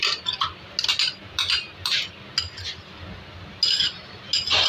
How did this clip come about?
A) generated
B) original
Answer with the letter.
B